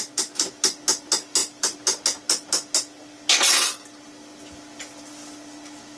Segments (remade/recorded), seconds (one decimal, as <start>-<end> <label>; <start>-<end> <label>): 0.0-1.4 recorded; 1.4-2.0 remade; 2.0-6.0 recorded